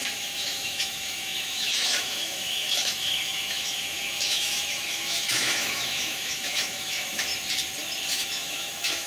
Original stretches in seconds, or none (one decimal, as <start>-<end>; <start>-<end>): 7.3-8.1